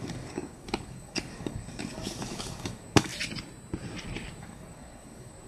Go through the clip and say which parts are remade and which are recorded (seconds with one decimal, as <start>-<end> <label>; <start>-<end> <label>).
0.0-3.1 remade; 3.1-4.4 recorded; 4.4-5.5 remade